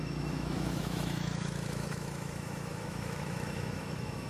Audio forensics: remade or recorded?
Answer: remade